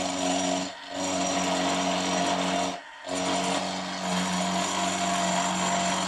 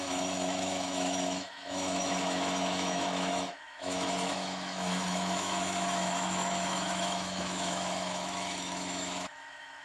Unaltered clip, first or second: first